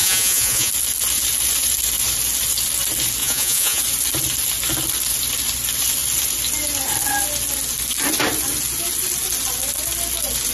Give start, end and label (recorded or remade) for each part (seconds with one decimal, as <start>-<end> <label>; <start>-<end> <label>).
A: 0.0-0.7 remade; 0.7-3.2 recorded; 3.2-3.8 remade; 3.8-10.5 recorded